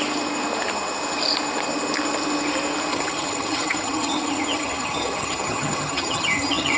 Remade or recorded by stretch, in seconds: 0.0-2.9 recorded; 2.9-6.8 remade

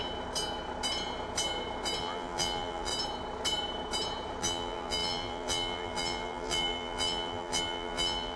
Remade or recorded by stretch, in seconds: 0.0-2.0 recorded; 2.0-2.9 remade; 2.9-4.4 recorded; 4.4-8.4 remade